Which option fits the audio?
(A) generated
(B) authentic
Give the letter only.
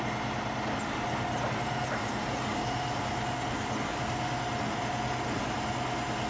B